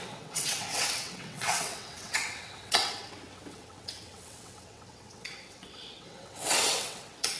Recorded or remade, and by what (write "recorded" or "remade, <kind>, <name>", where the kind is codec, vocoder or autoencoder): remade, vocoder, WaveNeXt